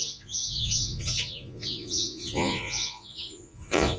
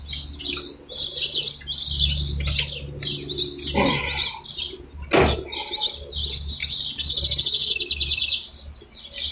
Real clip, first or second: second